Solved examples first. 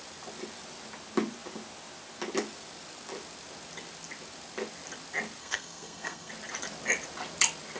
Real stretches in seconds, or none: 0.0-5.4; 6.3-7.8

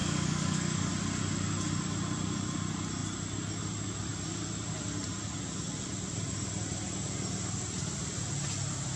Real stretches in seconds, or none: 0.9-9.0

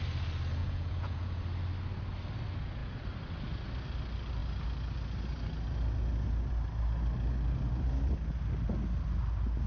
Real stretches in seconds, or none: 0.0-0.6; 1.4-9.7

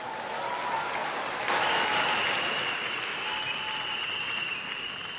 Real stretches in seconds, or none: 0.0-5.2

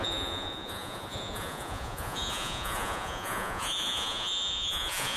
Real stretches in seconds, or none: none